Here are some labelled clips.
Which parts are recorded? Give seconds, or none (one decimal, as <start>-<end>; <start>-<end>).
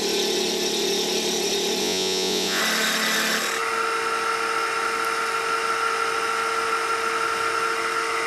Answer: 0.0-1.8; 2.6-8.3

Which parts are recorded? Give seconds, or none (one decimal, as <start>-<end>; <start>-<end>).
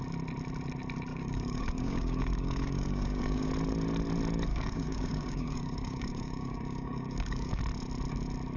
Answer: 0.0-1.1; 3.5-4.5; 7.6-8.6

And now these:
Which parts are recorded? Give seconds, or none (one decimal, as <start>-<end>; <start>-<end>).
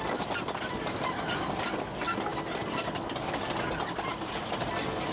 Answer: 0.0-5.1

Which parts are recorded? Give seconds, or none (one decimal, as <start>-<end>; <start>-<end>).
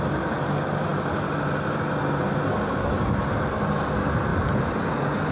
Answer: 0.0-5.3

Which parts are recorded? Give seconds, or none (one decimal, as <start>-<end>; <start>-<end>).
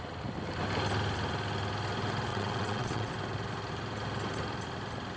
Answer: 0.0-2.3; 3.1-5.2